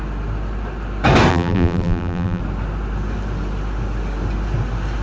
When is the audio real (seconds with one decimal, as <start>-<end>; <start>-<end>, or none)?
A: 0.0-1.3; 2.4-5.0